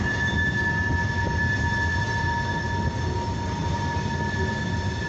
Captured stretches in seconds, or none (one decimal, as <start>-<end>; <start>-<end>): 0.0-1.9; 2.6-3.6; 4.5-5.1